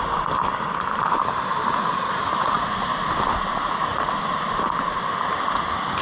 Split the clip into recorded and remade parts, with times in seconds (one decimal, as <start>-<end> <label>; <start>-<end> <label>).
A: 0.0-1.6 recorded; 1.6-2.9 remade; 2.9-3.5 recorded; 3.5-4.2 remade; 4.2-6.0 recorded